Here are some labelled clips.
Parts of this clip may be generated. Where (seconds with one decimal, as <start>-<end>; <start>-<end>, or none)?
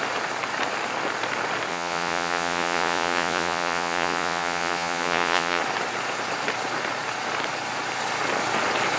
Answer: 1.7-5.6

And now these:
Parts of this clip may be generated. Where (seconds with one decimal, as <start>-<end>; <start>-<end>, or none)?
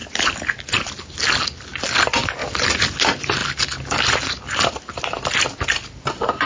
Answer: none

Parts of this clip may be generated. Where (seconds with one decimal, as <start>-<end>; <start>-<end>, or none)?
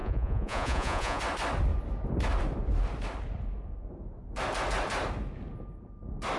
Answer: 0.0-1.2